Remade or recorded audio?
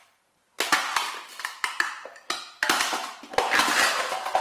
recorded